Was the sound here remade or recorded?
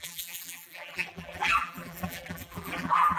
remade